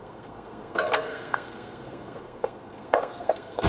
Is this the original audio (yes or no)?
no